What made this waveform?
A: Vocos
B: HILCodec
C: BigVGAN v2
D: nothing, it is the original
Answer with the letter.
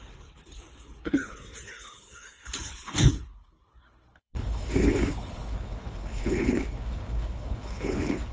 B